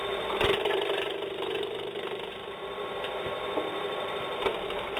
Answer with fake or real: fake